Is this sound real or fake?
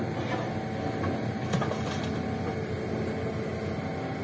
real